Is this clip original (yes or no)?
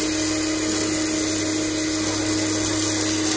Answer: yes